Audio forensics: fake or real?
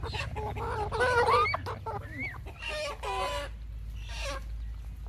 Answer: real